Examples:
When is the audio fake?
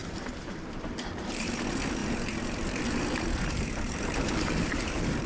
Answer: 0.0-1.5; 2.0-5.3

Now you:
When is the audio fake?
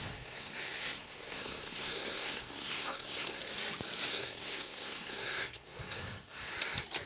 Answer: 0.0-3.4; 4.1-6.5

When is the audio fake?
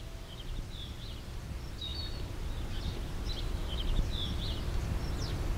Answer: none